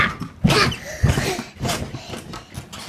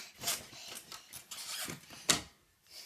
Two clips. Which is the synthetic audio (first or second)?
second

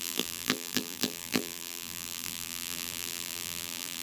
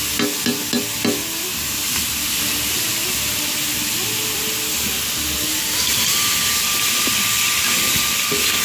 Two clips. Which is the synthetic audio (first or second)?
first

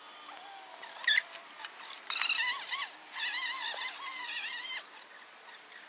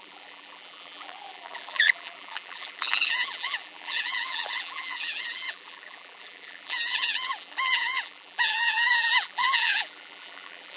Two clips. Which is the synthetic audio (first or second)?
second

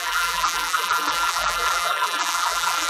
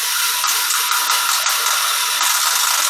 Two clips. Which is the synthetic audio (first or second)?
first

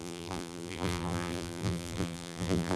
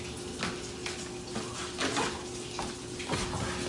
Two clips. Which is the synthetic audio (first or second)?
first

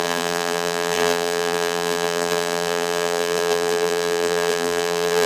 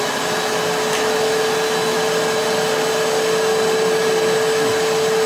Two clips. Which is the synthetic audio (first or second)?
first